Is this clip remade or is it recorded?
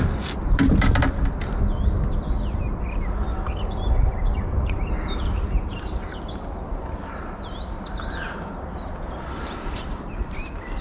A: recorded